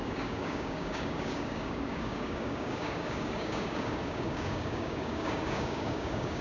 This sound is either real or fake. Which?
fake